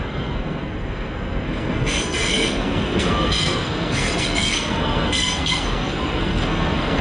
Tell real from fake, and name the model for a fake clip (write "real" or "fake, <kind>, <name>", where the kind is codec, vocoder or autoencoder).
fake, codec, SNAC